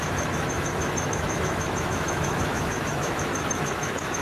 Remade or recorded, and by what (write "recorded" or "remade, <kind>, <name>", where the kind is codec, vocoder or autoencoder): remade, autoencoder, DAC-VAE